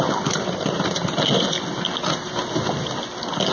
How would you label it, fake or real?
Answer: real